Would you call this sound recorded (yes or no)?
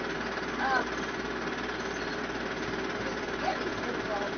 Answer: yes